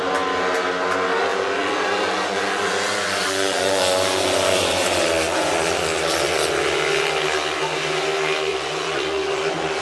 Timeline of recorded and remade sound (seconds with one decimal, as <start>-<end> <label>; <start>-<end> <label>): 0.0-1.3 recorded; 1.3-6.5 remade; 6.5-8.5 recorded; 8.5-9.8 remade